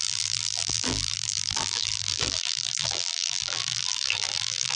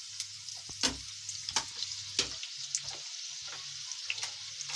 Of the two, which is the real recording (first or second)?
second